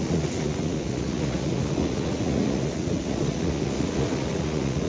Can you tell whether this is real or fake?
fake